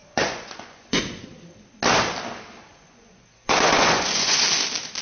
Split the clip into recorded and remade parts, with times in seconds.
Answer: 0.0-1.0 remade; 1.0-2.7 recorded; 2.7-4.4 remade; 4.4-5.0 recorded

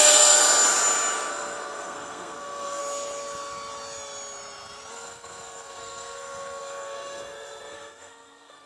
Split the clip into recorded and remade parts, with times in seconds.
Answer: 0.0-0.4 remade; 0.4-1.3 recorded; 1.3-2.8 remade; 2.8-4.9 recorded; 4.9-8.7 remade

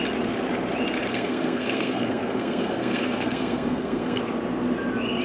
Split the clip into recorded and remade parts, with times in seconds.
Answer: 0.0-1.1 recorded; 1.1-4.2 remade; 4.2-5.2 recorded

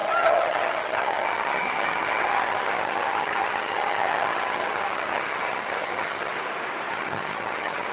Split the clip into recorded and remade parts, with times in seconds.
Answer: 0.0-6.3 remade; 6.3-6.9 recorded; 6.9-7.9 remade

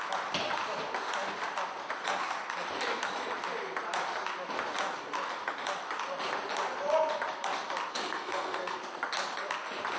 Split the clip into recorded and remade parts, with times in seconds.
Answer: 0.0-7.9 recorded; 7.9-8.8 remade; 8.8-10.0 recorded

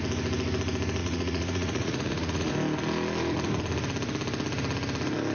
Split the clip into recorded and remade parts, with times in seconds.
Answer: 0.0-1.0 recorded; 1.0-2.5 remade; 2.5-5.3 recorded